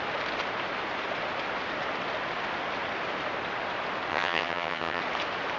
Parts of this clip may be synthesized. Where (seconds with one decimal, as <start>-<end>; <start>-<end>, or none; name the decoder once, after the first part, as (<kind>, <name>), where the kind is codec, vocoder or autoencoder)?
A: 4.1-5.0 (vocoder, HiFi-GAN)